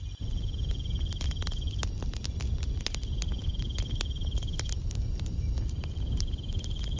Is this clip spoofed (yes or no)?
yes